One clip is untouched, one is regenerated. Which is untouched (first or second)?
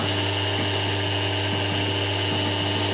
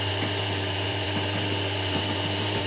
first